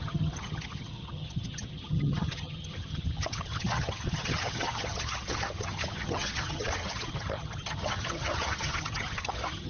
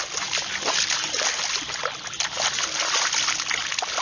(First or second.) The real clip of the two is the second